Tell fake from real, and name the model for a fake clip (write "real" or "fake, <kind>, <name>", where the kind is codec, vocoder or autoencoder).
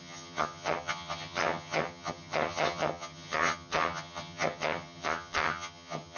fake, vocoder, HiFi-GAN